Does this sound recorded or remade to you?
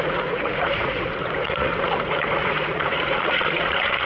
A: remade